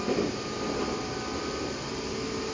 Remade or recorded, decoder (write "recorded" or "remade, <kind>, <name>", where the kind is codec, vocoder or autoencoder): recorded